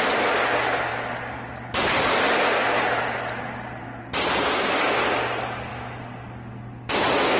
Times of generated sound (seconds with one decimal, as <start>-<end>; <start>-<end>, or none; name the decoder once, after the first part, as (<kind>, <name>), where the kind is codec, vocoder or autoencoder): 2.6-4.8 (vocoder, BigVGAN v2)